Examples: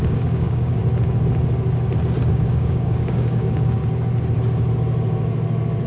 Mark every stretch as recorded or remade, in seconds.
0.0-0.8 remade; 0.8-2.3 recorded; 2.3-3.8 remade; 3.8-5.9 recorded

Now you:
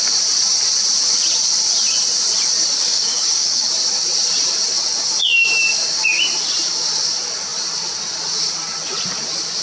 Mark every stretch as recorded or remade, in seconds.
0.0-2.8 recorded; 2.8-3.7 remade; 3.7-9.6 recorded